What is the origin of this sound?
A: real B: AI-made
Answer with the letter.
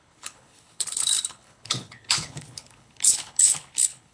B